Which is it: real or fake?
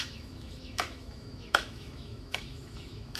fake